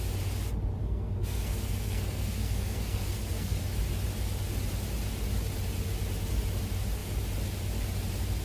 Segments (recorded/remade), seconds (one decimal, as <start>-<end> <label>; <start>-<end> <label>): 0.0-0.8 recorded; 0.8-3.6 remade; 3.6-8.4 recorded